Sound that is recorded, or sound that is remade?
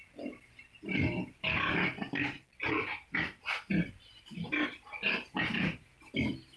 remade